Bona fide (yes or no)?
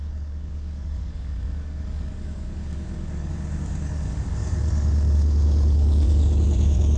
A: no